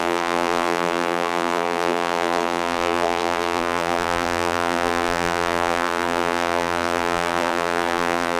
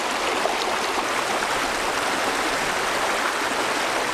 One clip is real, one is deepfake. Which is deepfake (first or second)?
first